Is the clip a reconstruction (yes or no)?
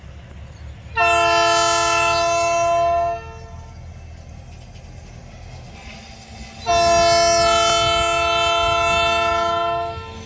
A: no